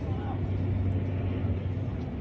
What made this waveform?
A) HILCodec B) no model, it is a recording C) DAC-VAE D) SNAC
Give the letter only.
B